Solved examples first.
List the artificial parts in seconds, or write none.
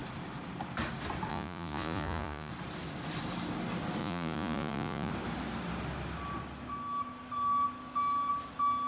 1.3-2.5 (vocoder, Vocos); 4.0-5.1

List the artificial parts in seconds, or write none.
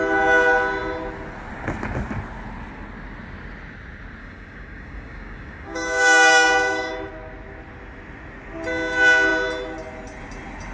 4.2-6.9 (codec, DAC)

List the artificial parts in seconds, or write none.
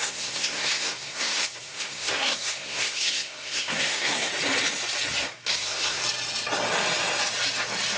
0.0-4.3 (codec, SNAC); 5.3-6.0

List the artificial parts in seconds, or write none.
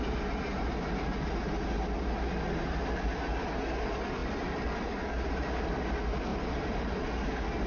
6.3-7.0 (vocoder, BigVGAN v2)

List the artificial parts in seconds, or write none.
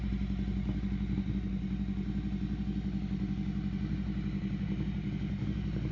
none